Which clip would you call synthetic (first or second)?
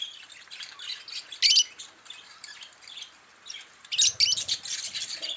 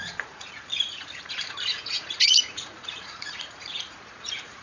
second